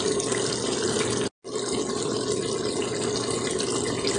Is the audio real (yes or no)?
yes